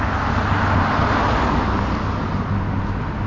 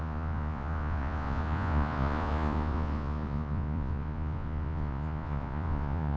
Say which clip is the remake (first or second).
second